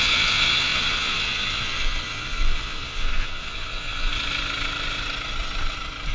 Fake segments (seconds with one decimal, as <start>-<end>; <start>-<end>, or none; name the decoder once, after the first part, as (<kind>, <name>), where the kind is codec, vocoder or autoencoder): 0.0-4.1 (vocoder, Vocos)